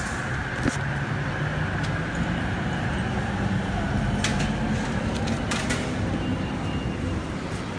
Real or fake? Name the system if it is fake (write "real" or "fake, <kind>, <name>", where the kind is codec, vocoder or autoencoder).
real